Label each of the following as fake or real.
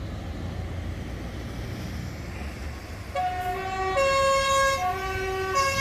real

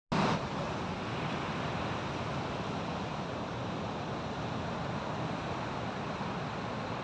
real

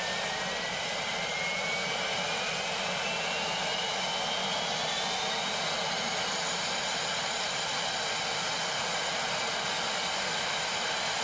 real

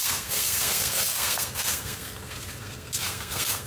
fake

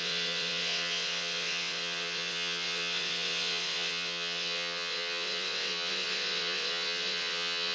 fake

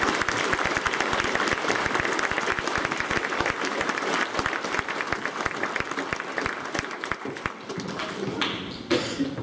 real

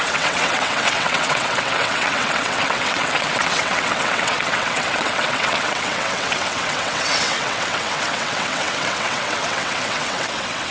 fake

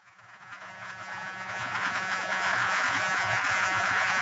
fake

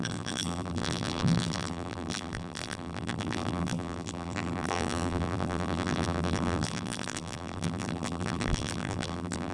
fake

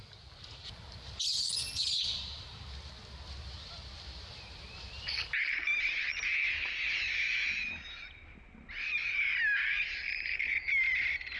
fake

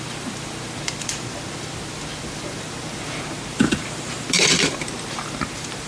fake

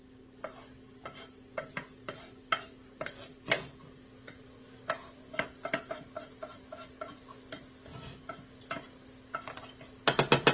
real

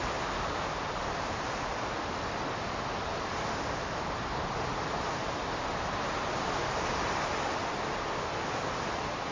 real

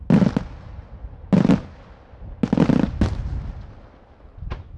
real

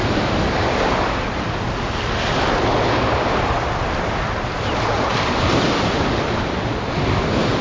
real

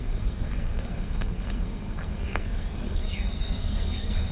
fake